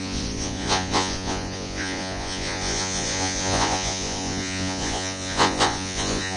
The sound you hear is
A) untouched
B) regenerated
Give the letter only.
B